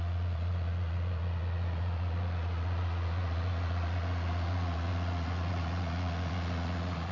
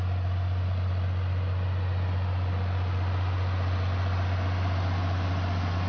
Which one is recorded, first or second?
second